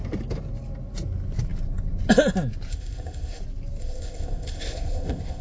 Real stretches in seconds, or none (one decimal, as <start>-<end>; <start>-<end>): 0.0-2.7; 3.4-3.8